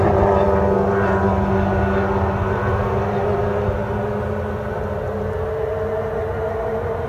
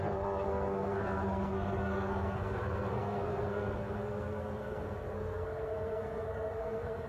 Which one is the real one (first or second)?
first